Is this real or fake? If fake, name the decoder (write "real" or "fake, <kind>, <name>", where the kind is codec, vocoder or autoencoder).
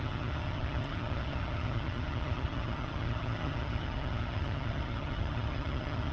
fake, vocoder, HiFi-GAN